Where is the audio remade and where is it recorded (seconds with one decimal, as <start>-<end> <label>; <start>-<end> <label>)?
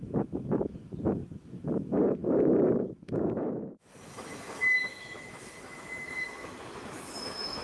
0.0-7.6 remade